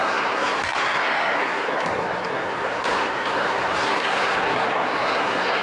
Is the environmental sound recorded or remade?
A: remade